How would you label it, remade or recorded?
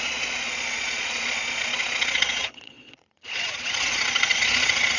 remade